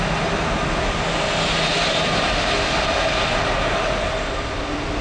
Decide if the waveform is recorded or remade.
recorded